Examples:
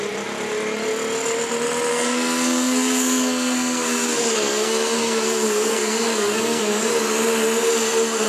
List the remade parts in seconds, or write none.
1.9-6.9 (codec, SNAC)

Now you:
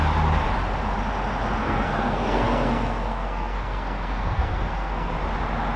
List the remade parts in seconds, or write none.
1.6-5.1 (codec, SNAC)

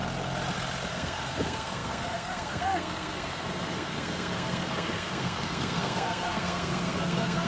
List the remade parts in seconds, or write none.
0.9-7.5 (codec, SNAC)

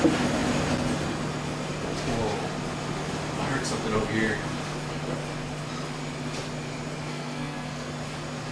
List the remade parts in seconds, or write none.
7.1-7.9 (codec, SNAC)

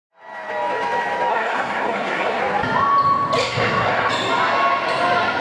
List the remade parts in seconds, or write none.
1.3-2.4 (codec, SNAC); 3.4-4.1

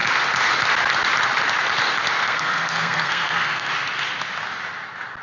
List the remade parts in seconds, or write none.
2.2-3.7 (codec, SNAC)

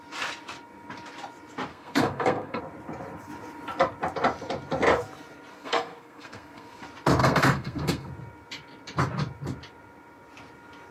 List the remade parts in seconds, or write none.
1.7-2.6 (codec, SNAC); 5.5-6.8; 7.2-8.1

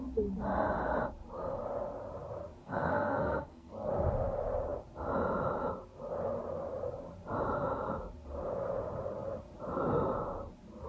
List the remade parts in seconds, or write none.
2.6-3.9 (codec, SNAC)